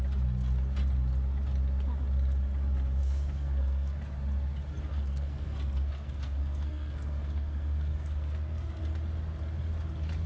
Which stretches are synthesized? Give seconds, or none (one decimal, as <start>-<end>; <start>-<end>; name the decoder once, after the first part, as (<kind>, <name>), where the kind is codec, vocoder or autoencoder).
3.0-4.0 (codec, SNAC); 4.9-8.8

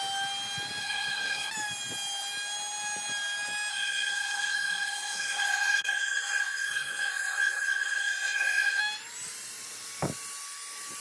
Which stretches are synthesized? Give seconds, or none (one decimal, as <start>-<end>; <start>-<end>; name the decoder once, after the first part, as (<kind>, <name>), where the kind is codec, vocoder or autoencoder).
0.8-1.5 (codec, SNAC); 3.7-8.8

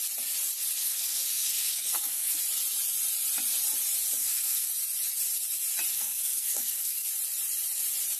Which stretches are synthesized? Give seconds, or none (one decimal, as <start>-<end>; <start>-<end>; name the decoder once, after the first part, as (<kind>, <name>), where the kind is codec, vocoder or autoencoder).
0.8-2.4 (codec, SNAC); 4.2-4.7; 5.9-7.1

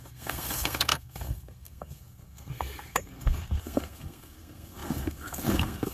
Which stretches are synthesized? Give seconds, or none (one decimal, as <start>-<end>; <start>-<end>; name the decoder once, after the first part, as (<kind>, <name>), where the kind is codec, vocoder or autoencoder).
0.0-5.9 (codec, SNAC)

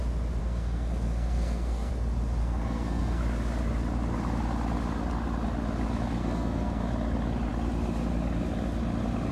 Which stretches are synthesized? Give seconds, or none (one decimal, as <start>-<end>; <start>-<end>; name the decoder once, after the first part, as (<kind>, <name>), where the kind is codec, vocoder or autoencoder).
0.4-1.9 (codec, SNAC); 2.4-3.2; 6.2-6.8

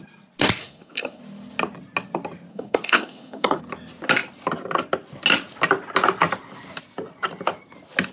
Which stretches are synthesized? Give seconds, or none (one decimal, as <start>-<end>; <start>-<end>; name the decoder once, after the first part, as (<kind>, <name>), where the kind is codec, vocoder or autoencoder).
0.6-1.2 (codec, SNAC); 2.5-3.6

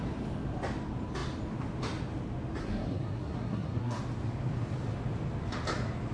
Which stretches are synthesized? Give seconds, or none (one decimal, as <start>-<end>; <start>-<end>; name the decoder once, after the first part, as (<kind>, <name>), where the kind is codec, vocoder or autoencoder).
2.6-4.0 (codec, SNAC)

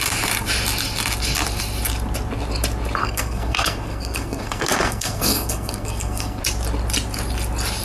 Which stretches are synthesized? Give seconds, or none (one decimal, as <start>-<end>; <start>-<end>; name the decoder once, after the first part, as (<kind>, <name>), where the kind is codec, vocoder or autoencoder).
3.0-6.4 (codec, SNAC)